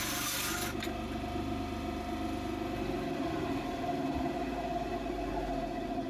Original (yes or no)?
yes